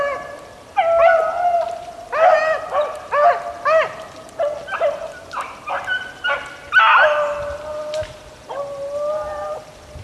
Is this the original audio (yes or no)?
yes